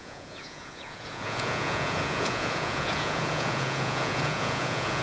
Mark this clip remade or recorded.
remade